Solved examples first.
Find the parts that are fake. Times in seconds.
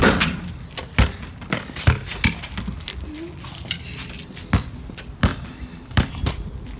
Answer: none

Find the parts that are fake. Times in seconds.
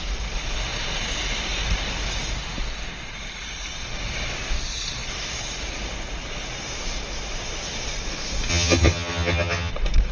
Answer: 8.5-9.7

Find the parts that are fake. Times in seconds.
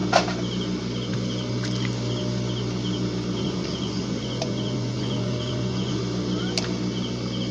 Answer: 3.4-6.0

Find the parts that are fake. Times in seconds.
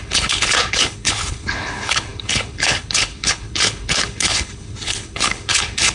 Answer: 0.0-5.9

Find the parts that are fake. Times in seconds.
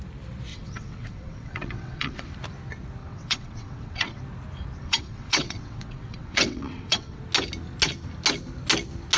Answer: 0.5-2.3; 3.0-4.2; 4.8-7.2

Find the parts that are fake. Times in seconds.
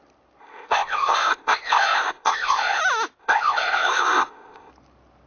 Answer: 0.4-2.8; 3.2-4.7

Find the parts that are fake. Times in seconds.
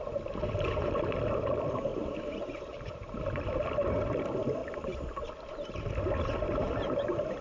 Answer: 1.9-3.1; 4.6-5.2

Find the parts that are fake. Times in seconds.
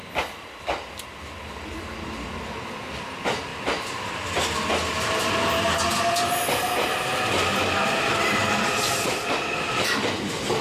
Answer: 3.5-4.1